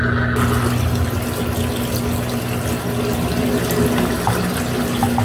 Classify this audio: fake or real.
real